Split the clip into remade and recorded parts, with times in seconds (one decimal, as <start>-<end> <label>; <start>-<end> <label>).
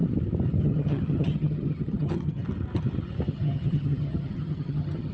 0.0-0.6 recorded; 0.6-2.4 remade; 2.4-3.3 recorded; 3.3-5.1 remade